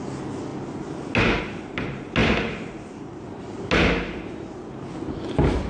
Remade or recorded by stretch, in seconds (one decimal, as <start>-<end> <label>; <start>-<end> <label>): 0.0-5.7 recorded